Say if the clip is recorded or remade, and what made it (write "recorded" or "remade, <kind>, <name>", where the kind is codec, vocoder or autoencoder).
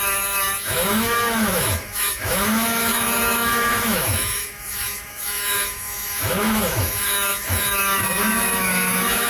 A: remade, autoencoder, DAC-VAE